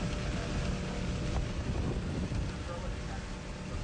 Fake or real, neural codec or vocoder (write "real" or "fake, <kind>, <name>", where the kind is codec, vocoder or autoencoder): real